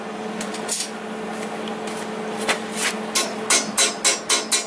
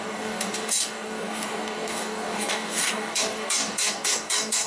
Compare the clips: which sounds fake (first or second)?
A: second